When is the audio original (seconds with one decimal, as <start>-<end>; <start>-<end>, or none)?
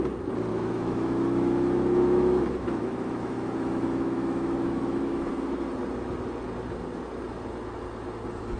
0.0-0.5; 5.3-8.6